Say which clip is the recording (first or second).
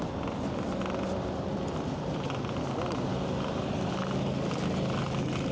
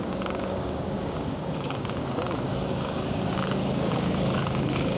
first